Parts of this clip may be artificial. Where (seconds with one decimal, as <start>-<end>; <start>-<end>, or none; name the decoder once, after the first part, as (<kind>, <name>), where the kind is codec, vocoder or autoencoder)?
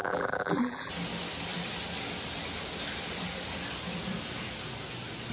0.0-0.9 (vocoder, BigVGAN v2)